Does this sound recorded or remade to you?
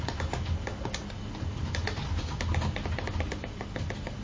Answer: recorded